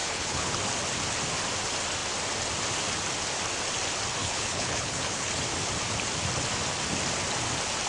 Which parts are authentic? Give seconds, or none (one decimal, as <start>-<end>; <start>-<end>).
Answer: 0.5-4.2; 5.3-7.9